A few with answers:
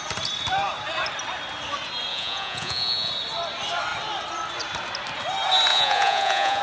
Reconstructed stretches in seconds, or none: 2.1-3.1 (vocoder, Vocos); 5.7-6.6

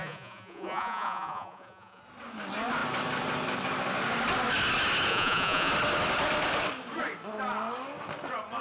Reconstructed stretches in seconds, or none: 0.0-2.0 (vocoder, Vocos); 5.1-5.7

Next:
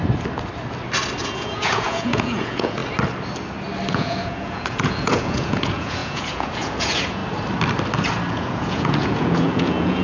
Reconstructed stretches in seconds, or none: 1.2-2.8 (vocoder, Vocos); 3.9-7.2; 8.3-10.0

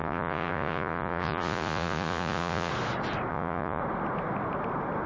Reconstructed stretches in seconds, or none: 0.0-2.7 (vocoder, Vocos); 3.3-3.8